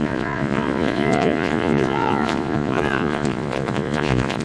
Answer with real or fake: fake